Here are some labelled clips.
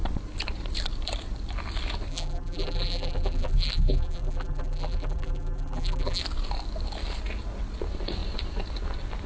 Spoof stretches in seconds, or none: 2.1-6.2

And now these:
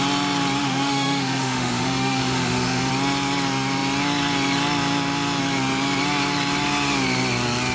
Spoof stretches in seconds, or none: 0.6-2.9

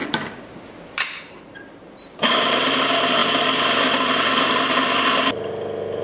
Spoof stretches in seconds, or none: 0.0-2.7

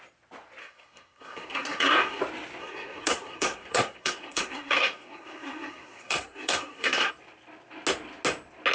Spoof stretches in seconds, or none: 0.6-2.2; 2.6-7.1

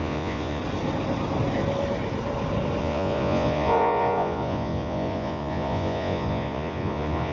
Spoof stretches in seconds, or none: 0.0-0.6; 2.8-7.3

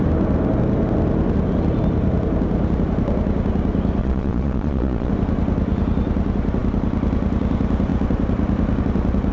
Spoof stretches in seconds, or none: 4.0-5.1

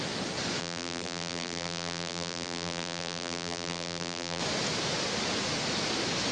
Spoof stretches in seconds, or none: 0.6-4.4

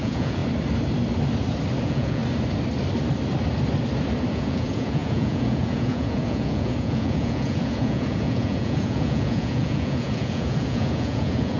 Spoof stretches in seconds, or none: 0.0-0.4; 1.8-2.2; 4.3-11.6